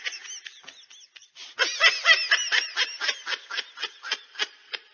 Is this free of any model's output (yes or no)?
yes